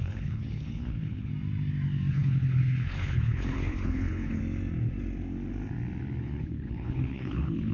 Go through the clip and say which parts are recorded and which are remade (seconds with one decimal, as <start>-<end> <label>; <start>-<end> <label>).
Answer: 0.0-1.3 remade; 1.3-2.1 recorded; 2.1-4.4 remade; 4.4-6.2 recorded; 6.2-7.7 remade